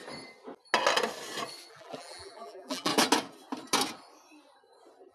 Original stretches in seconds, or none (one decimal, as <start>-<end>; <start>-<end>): 0.0-1.7; 2.9-5.1